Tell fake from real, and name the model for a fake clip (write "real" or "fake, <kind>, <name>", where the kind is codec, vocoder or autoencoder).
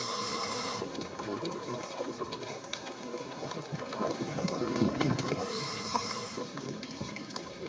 fake, codec, SNAC